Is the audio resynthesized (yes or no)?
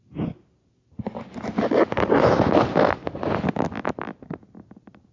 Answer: no